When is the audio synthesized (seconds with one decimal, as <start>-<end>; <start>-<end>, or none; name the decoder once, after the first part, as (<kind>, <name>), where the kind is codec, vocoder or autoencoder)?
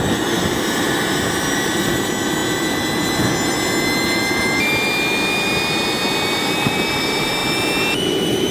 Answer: 0.0-2.4 (vocoder, BigVGAN v2); 6.4-7.4; 8.0-8.5